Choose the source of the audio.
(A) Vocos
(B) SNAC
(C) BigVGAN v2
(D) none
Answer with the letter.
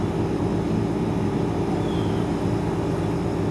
D